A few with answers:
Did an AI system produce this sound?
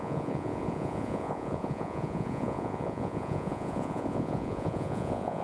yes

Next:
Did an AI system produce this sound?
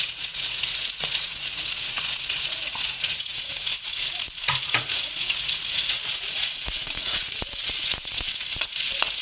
yes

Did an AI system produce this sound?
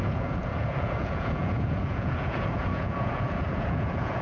yes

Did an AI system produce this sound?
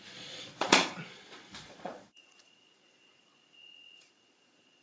yes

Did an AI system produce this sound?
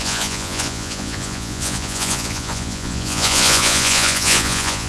yes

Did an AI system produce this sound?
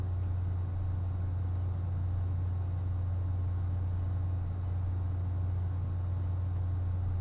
no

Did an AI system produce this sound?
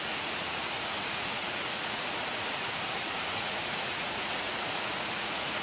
yes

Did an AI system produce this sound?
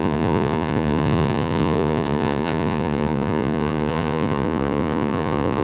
yes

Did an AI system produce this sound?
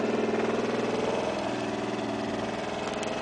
no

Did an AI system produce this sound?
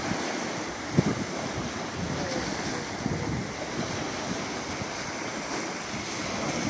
no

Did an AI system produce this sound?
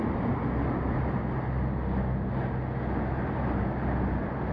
no